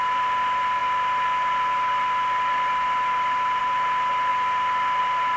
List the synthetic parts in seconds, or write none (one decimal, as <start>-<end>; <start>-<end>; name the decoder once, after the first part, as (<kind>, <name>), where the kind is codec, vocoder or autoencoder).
none